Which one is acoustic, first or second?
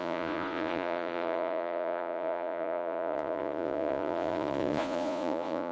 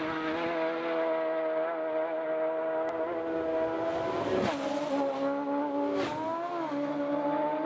second